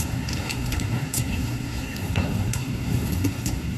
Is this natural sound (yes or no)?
no